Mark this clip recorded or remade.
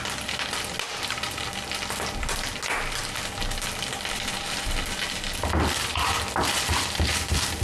recorded